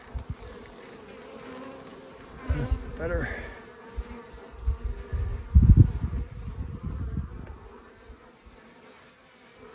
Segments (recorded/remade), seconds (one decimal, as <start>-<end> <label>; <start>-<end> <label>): 0.0-9.7 recorded

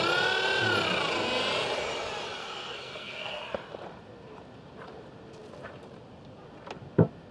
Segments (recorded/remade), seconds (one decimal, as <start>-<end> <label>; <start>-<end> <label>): 0.0-2.4 recorded; 2.4-3.4 remade; 3.4-7.3 recorded